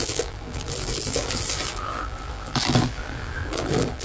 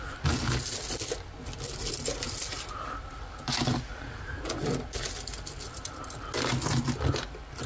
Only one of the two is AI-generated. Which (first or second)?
first